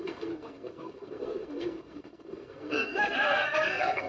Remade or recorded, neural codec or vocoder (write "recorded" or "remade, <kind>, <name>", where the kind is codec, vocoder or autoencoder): remade, codec, SNAC